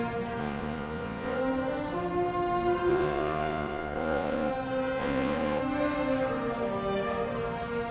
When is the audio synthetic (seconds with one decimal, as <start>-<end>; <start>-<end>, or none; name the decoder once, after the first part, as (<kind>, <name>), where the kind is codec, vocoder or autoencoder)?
0.4-1.4 (vocoder, Vocos); 2.9-4.5; 5.0-5.6